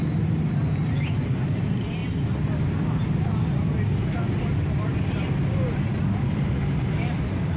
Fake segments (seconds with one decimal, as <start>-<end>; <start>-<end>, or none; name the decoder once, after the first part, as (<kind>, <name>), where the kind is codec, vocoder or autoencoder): none